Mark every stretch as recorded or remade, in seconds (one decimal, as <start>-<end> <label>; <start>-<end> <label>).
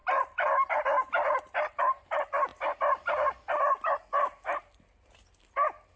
0.0-6.0 recorded